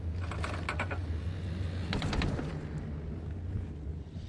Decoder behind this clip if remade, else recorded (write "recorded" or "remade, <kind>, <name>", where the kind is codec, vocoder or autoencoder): recorded